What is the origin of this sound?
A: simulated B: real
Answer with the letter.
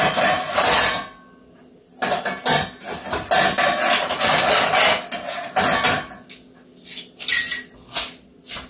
B